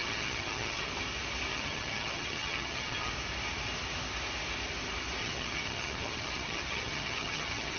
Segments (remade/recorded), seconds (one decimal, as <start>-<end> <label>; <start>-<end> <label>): 0.0-0.9 remade; 0.9-1.5 recorded; 1.5-3.1 remade; 3.1-5.2 recorded; 5.2-7.8 remade